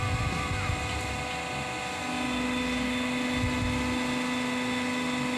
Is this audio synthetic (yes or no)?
no